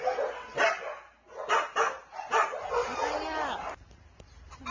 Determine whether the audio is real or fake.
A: real